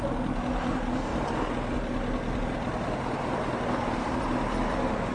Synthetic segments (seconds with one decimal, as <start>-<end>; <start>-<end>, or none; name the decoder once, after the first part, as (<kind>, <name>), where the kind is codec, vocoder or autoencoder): none